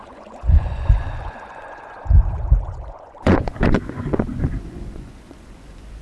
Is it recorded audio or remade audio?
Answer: remade